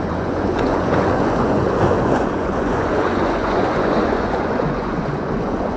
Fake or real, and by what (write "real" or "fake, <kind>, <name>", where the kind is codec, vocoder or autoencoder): fake, vocoder, Vocos